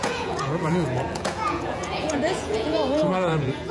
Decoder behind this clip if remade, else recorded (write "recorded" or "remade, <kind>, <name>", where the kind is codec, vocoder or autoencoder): remade, vocoder, Vocos